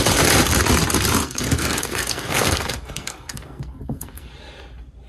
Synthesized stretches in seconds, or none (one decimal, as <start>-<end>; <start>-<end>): 1.2-4.3